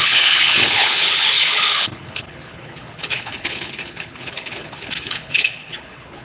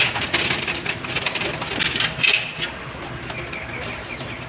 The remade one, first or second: first